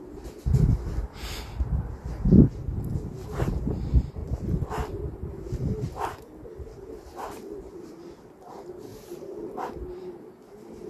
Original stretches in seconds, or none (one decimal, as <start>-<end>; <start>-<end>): 0.0-8.9; 9.5-10.9